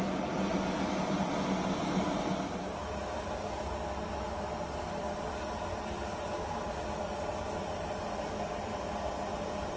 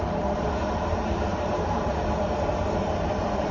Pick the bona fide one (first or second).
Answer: first